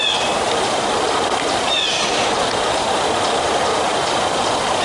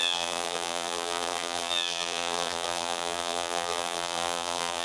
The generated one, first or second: second